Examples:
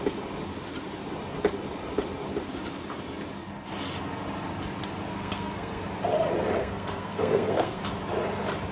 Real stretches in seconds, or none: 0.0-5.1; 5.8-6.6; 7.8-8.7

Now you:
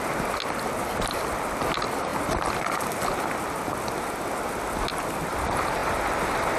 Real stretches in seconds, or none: 0.0-6.6

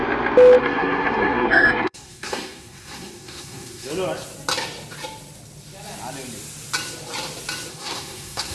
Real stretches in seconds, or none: 0.0-0.6; 3.9-7.7

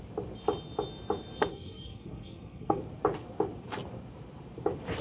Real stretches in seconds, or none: 0.0-1.5; 2.8-5.0

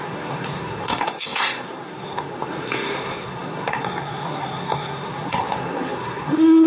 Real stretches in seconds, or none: none

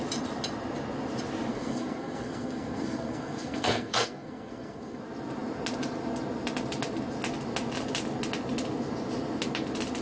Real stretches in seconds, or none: 0.0-1.5; 5.0-10.0

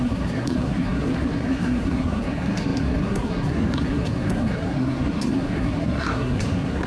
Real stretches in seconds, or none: none